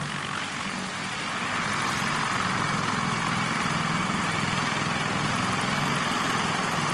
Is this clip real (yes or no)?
yes